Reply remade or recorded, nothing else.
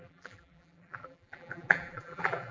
remade